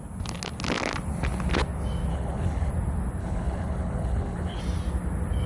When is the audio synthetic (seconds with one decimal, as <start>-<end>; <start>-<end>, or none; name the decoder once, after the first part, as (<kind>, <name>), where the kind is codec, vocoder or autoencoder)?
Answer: 2.1-2.7 (codec, HILCodec); 3.2-4.6